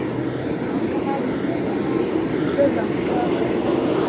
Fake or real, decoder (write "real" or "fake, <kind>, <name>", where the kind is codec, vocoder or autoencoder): real